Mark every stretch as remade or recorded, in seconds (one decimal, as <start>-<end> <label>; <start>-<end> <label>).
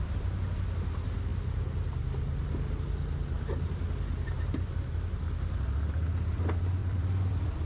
0.0-6.8 recorded; 6.8-7.7 remade